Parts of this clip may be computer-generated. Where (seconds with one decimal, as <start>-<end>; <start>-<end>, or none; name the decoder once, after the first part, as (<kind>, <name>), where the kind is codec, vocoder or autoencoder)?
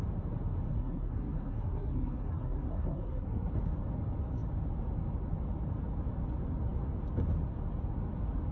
0.7-3.5 (codec, SNAC)